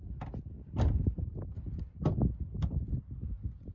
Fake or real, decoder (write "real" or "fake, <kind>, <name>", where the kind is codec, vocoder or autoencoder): real